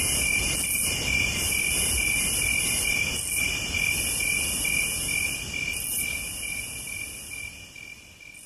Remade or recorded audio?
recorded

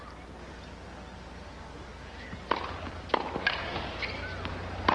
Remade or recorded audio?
recorded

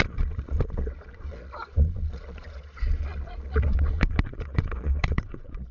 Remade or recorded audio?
remade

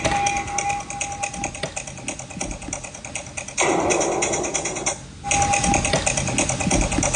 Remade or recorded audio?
recorded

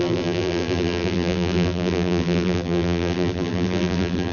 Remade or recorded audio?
remade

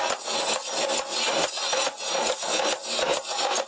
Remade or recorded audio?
recorded